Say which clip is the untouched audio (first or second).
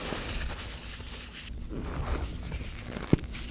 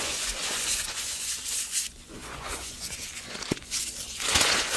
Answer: first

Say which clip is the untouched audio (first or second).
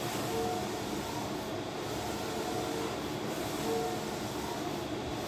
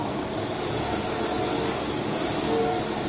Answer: first